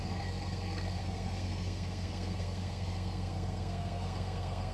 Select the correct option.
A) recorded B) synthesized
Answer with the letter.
B